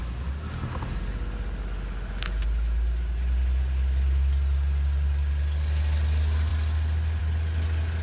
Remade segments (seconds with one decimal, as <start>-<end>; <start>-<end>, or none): none